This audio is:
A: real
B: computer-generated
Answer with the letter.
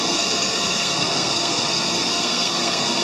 B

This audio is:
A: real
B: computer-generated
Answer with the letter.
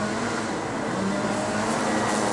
A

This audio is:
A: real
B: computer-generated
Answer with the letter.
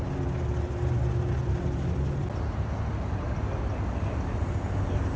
A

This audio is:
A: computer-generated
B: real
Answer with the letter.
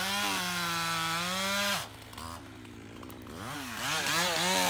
B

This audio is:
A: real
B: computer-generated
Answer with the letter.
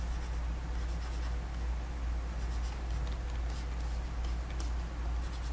A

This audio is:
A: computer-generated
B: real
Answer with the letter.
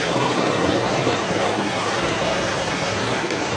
A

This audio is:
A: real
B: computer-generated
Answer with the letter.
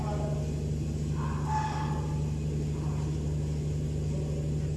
A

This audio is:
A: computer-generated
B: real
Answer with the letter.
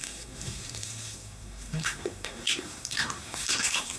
A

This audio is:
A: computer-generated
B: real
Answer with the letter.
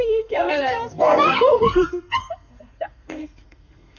A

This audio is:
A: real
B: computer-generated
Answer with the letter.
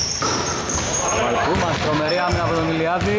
A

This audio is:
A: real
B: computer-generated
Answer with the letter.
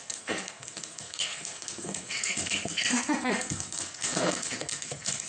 B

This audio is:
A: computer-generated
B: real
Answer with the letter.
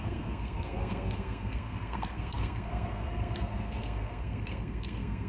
A